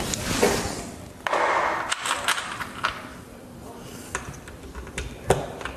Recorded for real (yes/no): yes